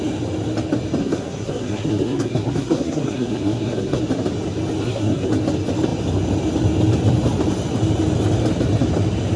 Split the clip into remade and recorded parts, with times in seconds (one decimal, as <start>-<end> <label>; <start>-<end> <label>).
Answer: 0.0-1.0 recorded; 1.0-4.0 remade; 4.0-4.8 recorded; 4.8-5.3 remade; 5.3-9.4 recorded